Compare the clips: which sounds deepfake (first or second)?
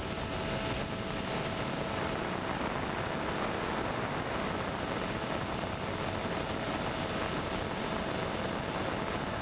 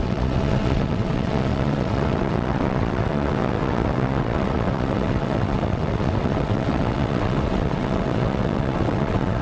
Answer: second